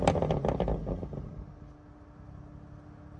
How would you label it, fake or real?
real